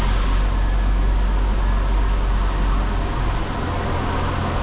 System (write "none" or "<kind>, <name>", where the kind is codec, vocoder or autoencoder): none